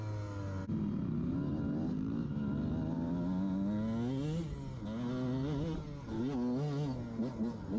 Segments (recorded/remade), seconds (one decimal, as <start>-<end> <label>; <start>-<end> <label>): 0.0-7.8 recorded